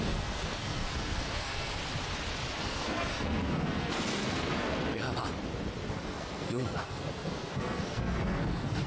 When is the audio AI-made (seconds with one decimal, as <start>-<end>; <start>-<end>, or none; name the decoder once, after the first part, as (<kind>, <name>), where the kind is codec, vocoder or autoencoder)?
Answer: 0.0-1.8 (codec, SNAC); 2.6-5.0; 5.9-8.9